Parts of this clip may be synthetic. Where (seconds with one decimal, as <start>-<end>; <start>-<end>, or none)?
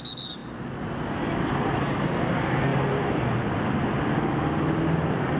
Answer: none